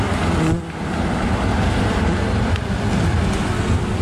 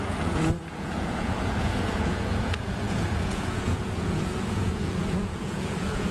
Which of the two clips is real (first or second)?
first